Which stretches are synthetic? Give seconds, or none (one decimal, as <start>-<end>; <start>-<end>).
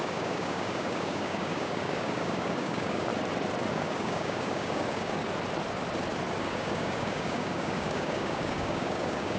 0.0-3.1; 3.7-5.2; 6.4-9.4